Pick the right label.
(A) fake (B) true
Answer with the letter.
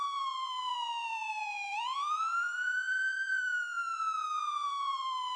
A